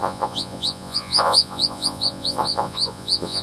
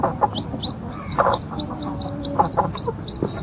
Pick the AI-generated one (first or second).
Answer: first